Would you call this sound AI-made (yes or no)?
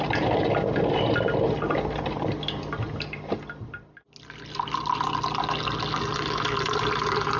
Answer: no